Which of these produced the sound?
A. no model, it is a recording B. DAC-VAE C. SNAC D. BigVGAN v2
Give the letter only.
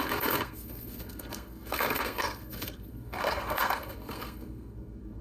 C